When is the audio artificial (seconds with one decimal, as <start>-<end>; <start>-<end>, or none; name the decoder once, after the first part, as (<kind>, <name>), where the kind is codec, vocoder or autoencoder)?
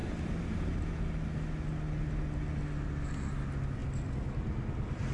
none